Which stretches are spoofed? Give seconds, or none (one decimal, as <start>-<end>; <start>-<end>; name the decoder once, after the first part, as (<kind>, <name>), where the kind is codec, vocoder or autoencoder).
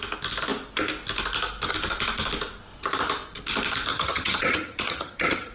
3.9-5.5 (vocoder, HiFi-GAN)